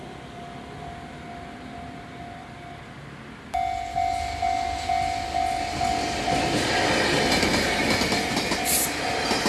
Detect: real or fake real